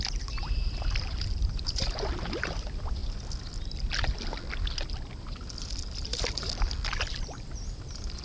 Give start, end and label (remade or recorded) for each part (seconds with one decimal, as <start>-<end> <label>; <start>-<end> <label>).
0.0-3.0 remade; 3.0-7.1 recorded; 7.1-8.2 remade